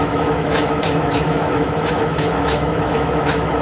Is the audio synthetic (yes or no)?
yes